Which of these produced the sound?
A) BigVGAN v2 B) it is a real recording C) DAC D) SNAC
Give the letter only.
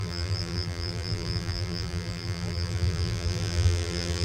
A